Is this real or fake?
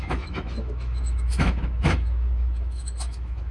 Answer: fake